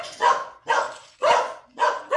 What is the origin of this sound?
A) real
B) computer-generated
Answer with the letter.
B